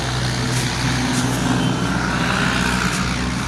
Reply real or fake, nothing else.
real